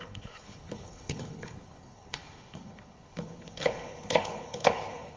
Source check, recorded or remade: remade